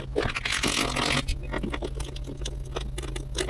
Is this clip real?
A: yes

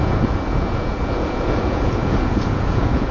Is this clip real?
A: no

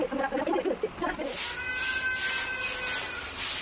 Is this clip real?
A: yes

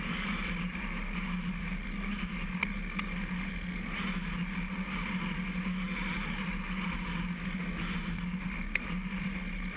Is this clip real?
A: yes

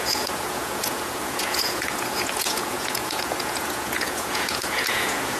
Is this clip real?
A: no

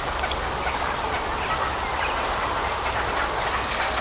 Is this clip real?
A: yes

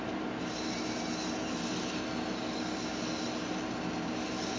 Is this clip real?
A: yes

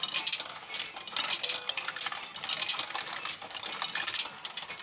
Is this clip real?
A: yes